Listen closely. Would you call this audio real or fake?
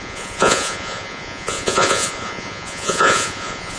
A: fake